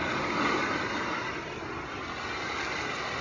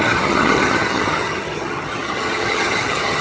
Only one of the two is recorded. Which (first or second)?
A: first